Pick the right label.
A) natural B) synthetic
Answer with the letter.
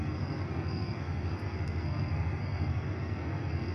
B